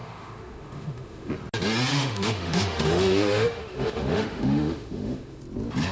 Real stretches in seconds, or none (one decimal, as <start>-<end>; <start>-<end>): 1.3-1.9; 5.4-5.9